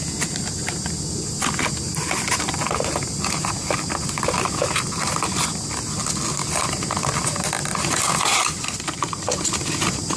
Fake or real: real